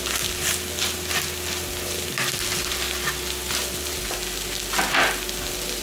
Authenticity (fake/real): real